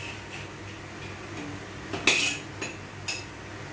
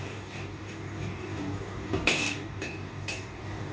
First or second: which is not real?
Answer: second